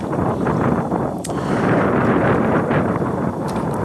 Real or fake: fake